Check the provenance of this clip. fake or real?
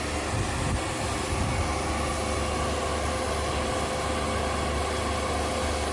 real